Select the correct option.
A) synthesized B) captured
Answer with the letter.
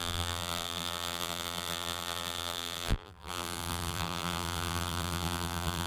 A